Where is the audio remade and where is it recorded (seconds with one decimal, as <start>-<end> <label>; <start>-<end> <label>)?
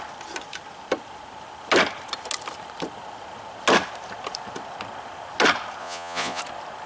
0.0-5.8 recorded; 5.8-6.4 remade; 6.4-6.9 recorded